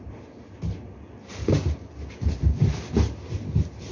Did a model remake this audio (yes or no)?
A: no